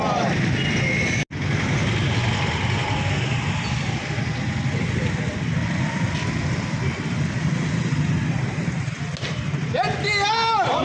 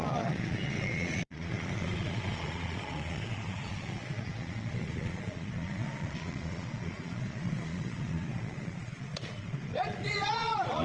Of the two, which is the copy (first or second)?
second